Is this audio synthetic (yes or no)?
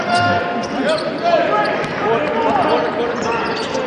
no